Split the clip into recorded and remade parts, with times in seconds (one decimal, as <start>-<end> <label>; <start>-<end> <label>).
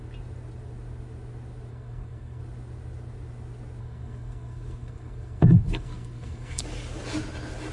0.0-1.7 recorded; 1.7-2.4 remade; 2.4-3.8 recorded; 3.8-6.6 remade; 6.6-7.7 recorded